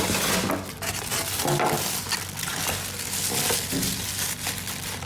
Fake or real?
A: real